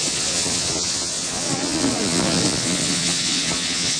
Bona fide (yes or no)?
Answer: no